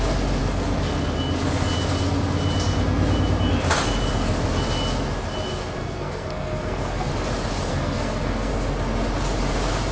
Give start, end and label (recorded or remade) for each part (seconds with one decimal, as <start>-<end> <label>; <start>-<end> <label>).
0.0-5.8 recorded; 5.8-7.1 remade; 7.1-7.7 recorded; 7.7-8.5 remade; 8.5-9.9 recorded